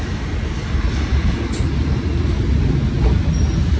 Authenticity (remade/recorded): recorded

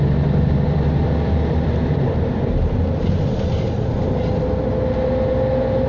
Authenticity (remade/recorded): recorded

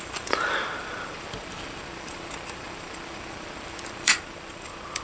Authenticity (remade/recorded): remade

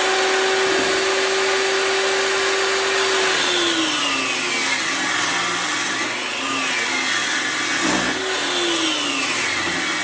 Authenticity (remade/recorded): recorded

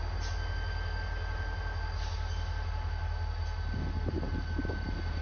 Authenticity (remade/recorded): recorded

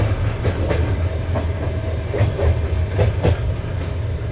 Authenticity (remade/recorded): recorded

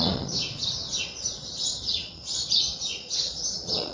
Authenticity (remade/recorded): remade